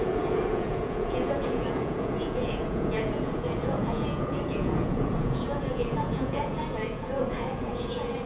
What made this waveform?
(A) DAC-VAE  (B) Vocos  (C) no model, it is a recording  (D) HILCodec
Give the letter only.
B